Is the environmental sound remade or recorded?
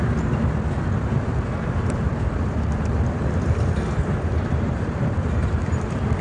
remade